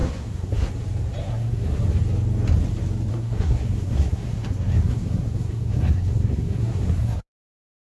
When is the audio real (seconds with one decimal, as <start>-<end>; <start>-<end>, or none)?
0.7-1.2; 1.8-3.1